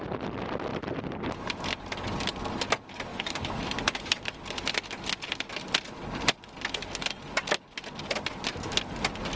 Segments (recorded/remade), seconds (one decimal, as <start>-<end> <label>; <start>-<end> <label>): 0.0-0.7 recorded; 0.7-1.6 remade; 1.6-3.1 recorded; 3.1-4.4 remade; 4.4-9.4 recorded